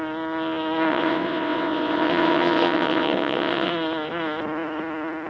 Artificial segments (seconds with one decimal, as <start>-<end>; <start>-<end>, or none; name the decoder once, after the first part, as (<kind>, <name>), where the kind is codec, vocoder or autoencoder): 0.9-3.7 (vocoder, WaveNeXt)